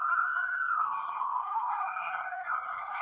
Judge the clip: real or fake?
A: fake